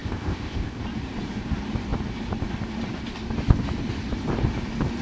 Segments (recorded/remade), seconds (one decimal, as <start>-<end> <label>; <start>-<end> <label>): 0.0-0.8 remade; 0.8-5.0 recorded